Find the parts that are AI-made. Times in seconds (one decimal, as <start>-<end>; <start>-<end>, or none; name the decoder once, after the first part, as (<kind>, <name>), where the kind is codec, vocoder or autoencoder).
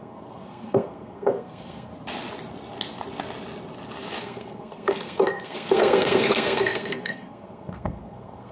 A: 0.0-1.9 (codec, SNAC); 4.2-8.5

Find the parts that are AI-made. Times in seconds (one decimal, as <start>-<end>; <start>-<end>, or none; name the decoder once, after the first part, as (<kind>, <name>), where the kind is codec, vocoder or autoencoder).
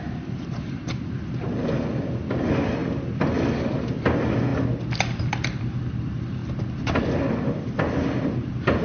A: 0.0-2.8 (vocoder, BigVGAN v2); 3.6-4.5; 5.2-6.4; 7.0-8.8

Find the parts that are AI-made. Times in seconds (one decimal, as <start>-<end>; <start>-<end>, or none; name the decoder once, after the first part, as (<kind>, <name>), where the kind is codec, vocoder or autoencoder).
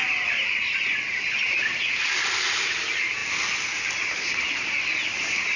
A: none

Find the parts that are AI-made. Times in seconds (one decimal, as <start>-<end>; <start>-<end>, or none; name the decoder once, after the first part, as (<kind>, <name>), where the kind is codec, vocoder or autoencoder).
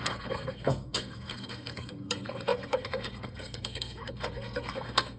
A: 0.0-5.2 (codec, SNAC)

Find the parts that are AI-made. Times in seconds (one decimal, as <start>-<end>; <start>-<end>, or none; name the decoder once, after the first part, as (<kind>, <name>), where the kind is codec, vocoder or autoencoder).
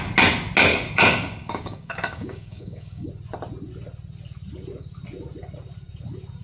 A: 0.7-3.1 (codec, DAC)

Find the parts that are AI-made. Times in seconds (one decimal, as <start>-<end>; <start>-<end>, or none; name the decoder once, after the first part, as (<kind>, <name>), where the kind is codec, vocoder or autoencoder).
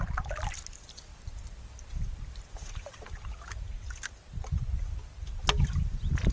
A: none